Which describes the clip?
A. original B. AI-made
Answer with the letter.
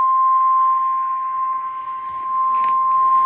A